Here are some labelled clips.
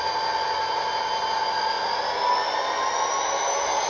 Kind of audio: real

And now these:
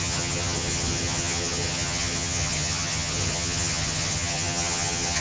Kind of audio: fake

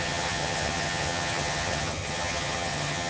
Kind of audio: fake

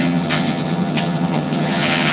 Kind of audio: fake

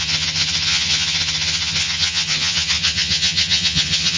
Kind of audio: fake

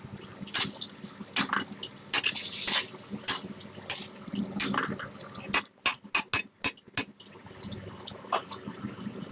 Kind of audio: real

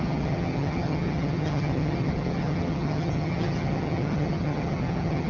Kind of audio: fake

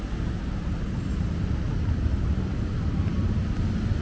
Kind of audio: real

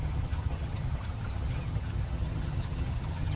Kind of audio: fake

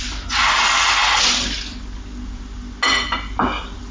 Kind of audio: real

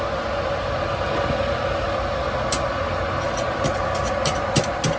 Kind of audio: real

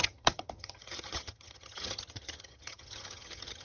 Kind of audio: fake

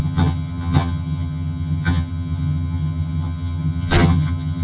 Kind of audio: fake